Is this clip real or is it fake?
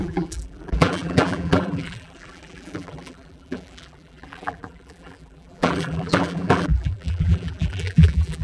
fake